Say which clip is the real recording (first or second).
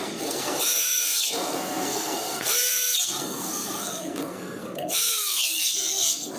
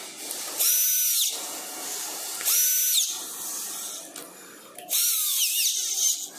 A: second